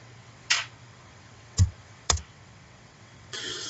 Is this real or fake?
fake